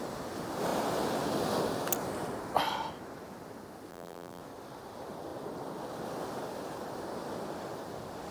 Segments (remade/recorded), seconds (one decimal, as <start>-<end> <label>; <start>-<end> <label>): 0.0-3.9 recorded; 3.9-4.4 remade; 4.4-8.3 recorded